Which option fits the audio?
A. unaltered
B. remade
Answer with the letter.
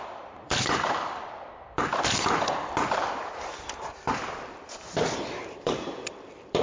B